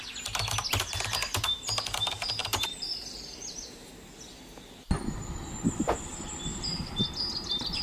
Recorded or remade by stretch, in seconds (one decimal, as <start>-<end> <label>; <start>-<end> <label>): 0.0-2.4 recorded; 2.4-3.9 remade; 3.9-6.5 recorded; 6.5-7.1 remade; 7.1-7.8 recorded